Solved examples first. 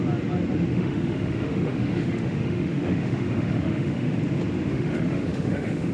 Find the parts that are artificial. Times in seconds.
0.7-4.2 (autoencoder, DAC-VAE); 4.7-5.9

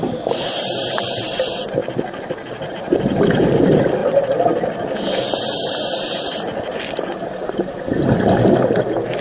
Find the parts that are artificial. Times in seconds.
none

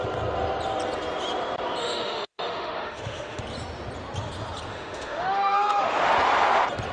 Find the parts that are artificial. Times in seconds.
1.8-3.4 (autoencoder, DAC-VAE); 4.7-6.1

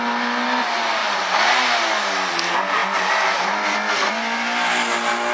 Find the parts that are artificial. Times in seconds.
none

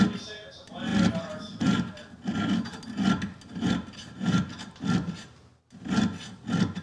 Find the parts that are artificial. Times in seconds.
none

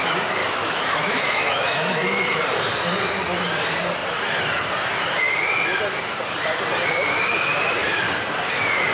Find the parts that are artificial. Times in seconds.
0.4-2.4 (autoencoder, DAC-VAE)